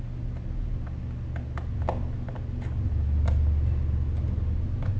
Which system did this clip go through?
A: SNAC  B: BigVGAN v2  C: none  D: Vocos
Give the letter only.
C